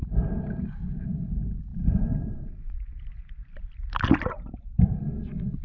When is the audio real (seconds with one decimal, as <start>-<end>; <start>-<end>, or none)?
0.0-1.7; 4.8-5.6